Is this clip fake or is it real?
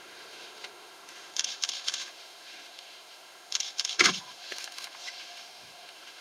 fake